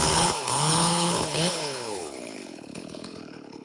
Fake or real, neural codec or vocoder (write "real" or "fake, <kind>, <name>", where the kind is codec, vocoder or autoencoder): fake, codec, HILCodec